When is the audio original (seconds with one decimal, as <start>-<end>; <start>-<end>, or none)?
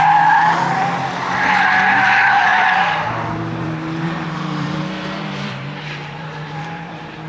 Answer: 0.0-2.5